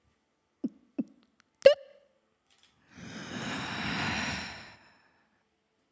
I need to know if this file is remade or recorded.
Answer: recorded